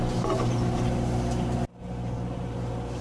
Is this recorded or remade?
recorded